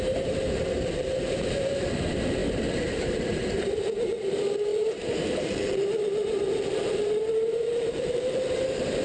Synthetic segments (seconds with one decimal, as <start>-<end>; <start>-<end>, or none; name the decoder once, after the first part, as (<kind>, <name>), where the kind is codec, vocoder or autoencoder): 0.0-9.0 (vocoder, BigVGAN v2)